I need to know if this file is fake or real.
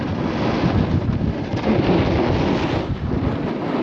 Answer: real